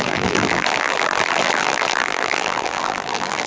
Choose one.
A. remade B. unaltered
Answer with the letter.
A